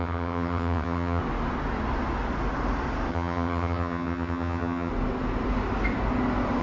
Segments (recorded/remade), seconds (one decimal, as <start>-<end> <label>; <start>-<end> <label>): 0.0-1.2 remade; 1.2-3.1 recorded; 3.1-4.9 remade; 4.9-6.6 recorded